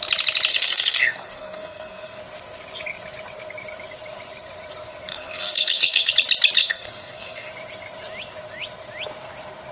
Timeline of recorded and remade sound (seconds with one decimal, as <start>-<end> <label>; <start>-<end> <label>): 0.0-0.5 recorded; 0.5-2.2 remade; 2.2-5.1 recorded; 5.1-6.1 remade; 6.1-6.6 recorded; 6.6-7.5 remade; 7.5-9.7 recorded